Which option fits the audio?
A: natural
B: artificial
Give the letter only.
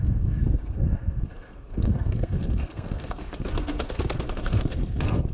B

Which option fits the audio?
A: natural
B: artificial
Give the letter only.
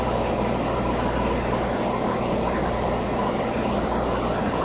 A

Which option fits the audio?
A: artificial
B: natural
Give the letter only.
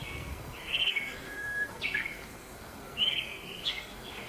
A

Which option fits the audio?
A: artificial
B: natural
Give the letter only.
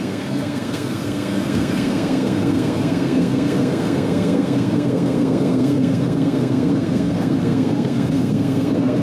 A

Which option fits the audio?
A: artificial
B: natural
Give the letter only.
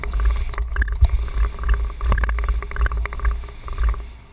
B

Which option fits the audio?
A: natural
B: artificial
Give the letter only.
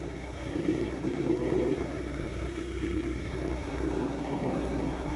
B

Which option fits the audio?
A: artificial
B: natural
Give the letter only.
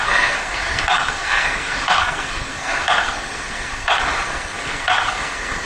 A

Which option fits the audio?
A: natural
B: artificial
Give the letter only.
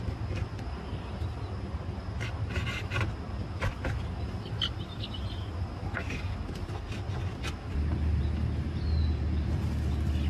A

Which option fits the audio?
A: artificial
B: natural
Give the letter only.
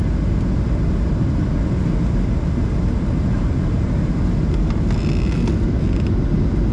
B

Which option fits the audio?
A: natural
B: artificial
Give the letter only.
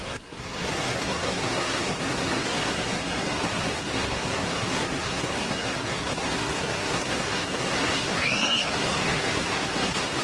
B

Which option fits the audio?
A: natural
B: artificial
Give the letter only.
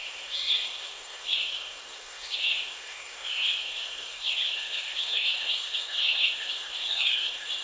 B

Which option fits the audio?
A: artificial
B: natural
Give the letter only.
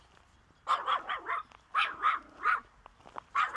B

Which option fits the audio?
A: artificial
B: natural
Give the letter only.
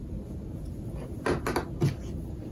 B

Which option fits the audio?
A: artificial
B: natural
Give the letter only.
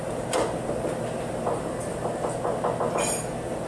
B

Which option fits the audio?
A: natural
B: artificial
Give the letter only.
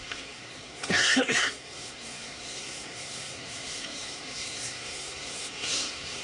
B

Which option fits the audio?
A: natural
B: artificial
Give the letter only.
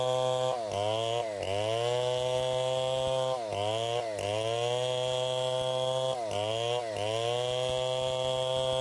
A